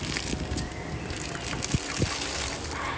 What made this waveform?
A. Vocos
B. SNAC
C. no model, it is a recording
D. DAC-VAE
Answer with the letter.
C